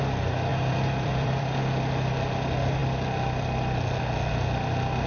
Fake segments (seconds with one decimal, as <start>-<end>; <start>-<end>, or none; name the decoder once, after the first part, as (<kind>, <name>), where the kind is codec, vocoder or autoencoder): 0.5-1.6 (vocoder, BigVGAN v2)